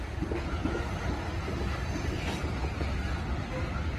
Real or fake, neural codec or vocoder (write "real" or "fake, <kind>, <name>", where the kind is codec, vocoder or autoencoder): real